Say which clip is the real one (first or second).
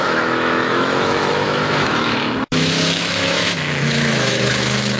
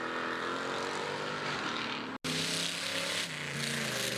second